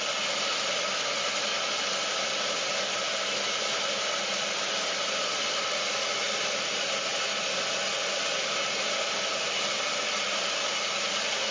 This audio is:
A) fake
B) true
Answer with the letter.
B